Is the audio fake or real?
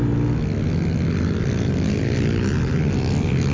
real